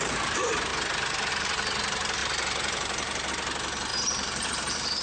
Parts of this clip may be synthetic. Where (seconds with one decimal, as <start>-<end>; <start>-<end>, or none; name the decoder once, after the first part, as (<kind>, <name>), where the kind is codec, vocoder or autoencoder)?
0.0-0.7 (vocoder, BigVGAN v2); 1.3-5.0